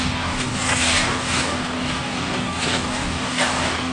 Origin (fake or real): fake